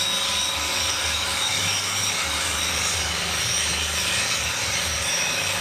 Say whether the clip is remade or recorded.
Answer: remade